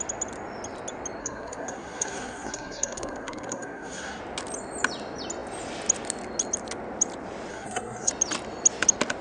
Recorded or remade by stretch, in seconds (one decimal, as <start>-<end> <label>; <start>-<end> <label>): 0.0-1.2 recorded; 1.2-4.2 remade; 4.2-7.5 recorded; 7.5-8.1 remade; 8.1-9.2 recorded